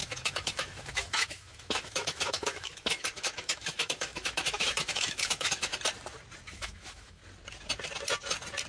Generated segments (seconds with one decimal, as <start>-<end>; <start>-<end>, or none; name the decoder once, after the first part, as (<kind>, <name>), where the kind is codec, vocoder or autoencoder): 0.0-5.7 (autoencoder, DAC-VAE); 6.5-7.2